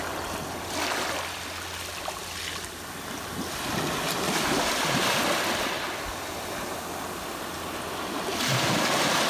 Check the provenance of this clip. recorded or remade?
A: recorded